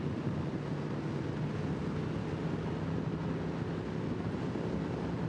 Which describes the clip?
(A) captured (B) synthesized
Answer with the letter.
A